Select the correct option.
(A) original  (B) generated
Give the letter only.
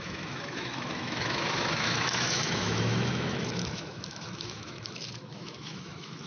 B